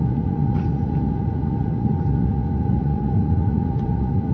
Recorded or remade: remade